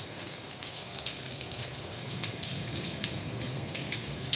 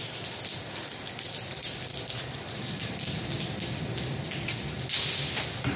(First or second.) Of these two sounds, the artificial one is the first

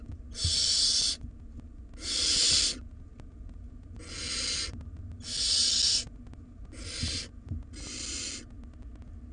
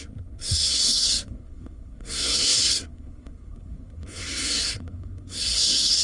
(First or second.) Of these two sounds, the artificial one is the second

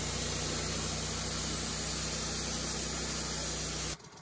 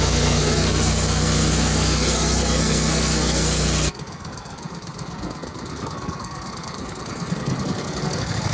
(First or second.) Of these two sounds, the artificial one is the second